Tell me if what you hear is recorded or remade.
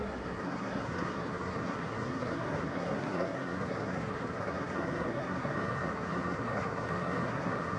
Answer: remade